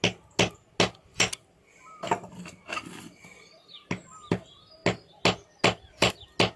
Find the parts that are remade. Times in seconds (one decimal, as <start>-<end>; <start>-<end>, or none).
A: none